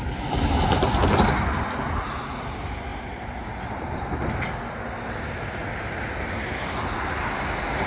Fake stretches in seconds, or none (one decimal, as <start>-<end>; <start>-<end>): none